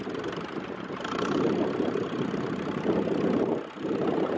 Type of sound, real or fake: fake